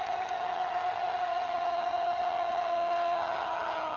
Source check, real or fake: fake